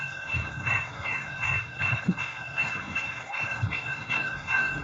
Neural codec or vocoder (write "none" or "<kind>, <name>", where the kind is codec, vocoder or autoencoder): codec, SNAC